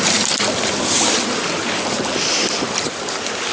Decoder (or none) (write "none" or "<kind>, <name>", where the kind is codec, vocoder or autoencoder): none